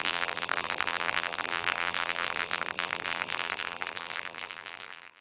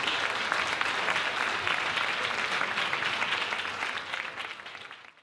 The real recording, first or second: second